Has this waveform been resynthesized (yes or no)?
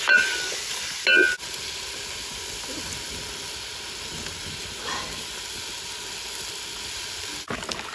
no